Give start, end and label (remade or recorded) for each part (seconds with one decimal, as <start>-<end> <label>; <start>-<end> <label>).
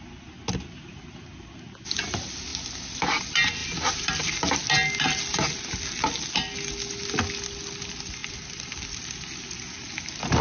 0.0-3.6 recorded; 3.6-4.1 remade; 4.1-10.4 recorded